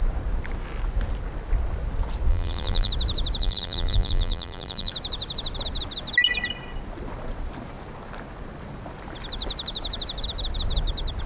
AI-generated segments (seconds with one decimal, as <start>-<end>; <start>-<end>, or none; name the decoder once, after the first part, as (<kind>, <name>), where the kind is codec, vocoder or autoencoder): 2.3-2.9 (vocoder, BigVGAN v2); 3.4-4.9